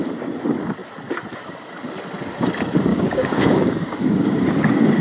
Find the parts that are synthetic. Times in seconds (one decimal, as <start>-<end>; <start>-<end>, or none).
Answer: 2.9-5.0